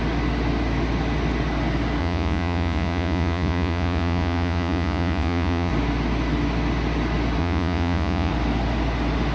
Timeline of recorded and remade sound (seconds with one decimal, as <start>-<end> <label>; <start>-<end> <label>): 0.0-2.0 recorded; 2.0-5.7 remade; 5.7-7.4 recorded; 7.4-8.3 remade; 8.3-9.3 recorded